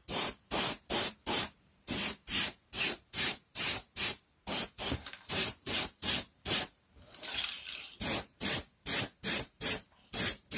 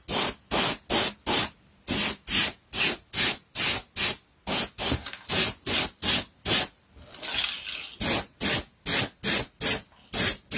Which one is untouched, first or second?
second